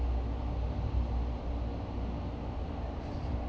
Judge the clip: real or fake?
real